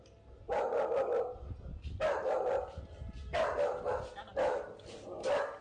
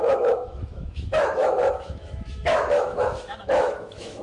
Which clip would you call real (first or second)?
first